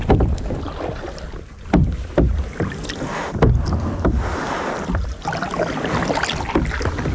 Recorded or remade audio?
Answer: recorded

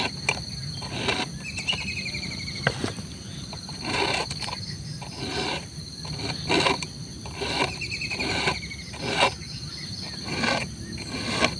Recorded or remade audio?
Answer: recorded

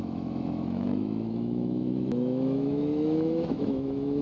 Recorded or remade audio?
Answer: remade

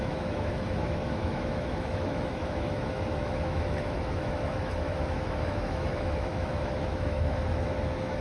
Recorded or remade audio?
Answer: remade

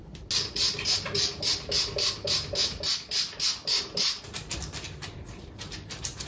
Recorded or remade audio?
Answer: recorded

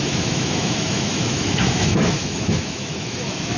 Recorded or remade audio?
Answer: remade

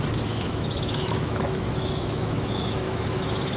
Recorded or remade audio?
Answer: remade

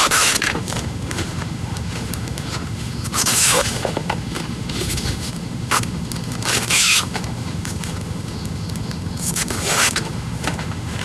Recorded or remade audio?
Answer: remade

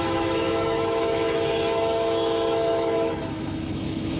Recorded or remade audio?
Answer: remade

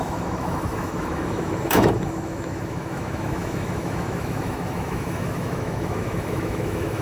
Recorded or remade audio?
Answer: remade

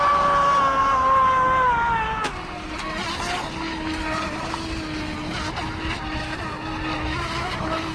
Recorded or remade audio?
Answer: recorded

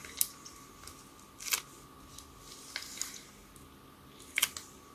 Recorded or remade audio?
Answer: recorded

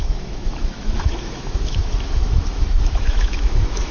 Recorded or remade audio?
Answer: remade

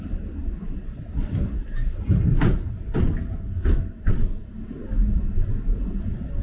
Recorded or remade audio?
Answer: recorded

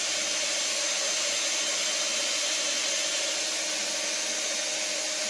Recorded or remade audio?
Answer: recorded